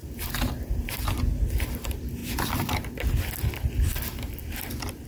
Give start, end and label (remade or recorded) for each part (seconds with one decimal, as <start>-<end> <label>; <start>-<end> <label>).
0.0-1.0 remade; 1.0-2.2 recorded; 2.2-3.4 remade; 3.4-3.9 recorded; 3.9-4.4 remade; 4.4-5.1 recorded